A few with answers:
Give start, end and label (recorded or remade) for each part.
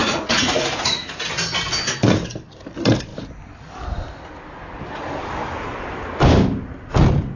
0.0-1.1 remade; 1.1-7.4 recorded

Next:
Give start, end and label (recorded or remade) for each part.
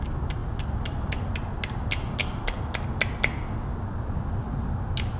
0.0-5.2 recorded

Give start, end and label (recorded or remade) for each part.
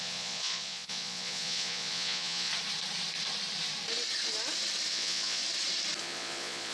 0.0-2.5 remade; 2.5-4.9 recorded; 4.9-5.4 remade; 5.4-6.0 recorded; 6.0-6.7 remade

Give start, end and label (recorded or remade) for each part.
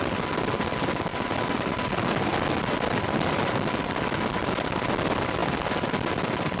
0.0-6.6 recorded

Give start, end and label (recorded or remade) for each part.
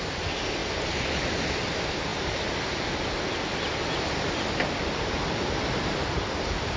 0.0-6.8 recorded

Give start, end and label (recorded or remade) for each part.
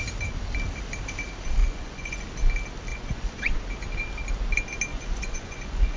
0.0-1.6 recorded; 1.6-2.2 remade; 2.2-2.9 recorded; 2.9-3.6 remade; 3.6-4.9 recorded; 4.9-6.0 remade